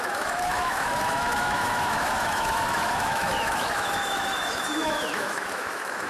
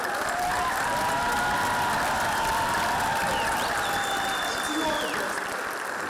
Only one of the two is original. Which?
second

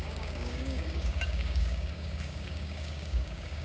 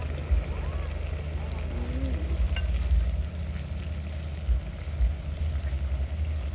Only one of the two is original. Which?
second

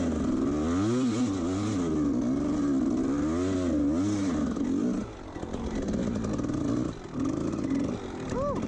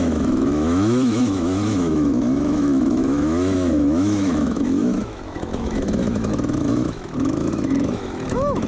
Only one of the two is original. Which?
first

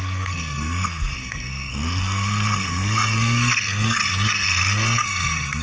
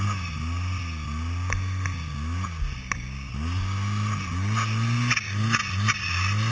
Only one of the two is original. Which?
second